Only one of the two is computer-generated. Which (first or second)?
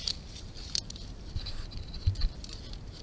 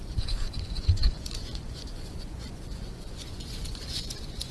second